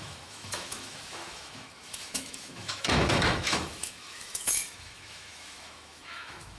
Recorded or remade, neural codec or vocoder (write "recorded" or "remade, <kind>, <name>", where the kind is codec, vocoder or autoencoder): remade, autoencoder, DAC-VAE